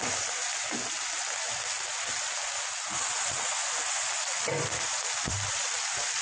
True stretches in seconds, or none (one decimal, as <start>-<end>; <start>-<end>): 0.5-1.5; 1.9-5.3